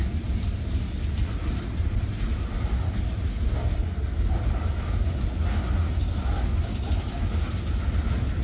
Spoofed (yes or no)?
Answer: no